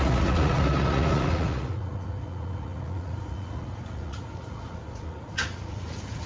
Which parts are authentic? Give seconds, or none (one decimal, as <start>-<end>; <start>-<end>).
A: none